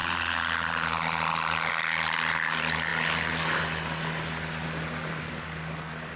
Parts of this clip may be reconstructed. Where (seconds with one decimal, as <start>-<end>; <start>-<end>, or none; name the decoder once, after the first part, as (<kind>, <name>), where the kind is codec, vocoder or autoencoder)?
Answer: none